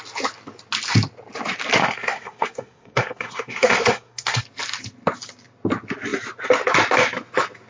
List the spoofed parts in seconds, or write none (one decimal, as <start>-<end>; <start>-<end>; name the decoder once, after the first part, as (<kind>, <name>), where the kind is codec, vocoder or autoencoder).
1.8-4.4 (codec, SNAC)